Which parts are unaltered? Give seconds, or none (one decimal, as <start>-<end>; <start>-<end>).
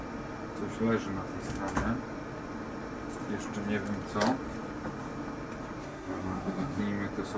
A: 0.0-5.8; 6.8-7.4